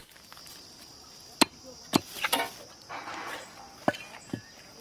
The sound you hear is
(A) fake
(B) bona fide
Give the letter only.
B